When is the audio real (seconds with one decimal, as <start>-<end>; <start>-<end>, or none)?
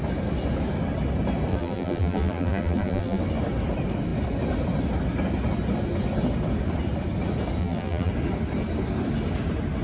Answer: 0.0-1.5; 3.2-7.6; 8.1-9.8